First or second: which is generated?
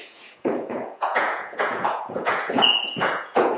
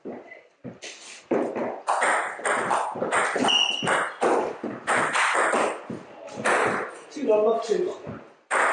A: first